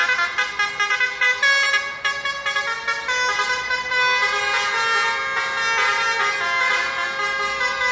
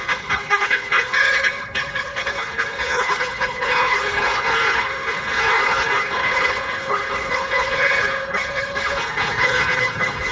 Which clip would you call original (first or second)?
first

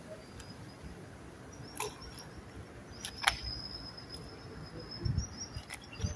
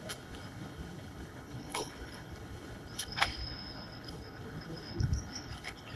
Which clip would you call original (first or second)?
first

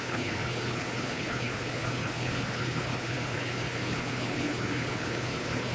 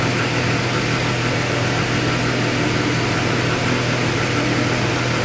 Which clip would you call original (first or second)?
second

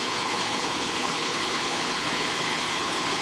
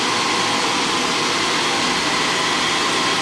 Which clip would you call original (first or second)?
second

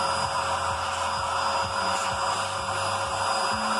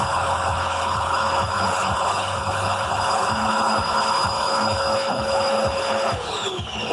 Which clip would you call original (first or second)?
first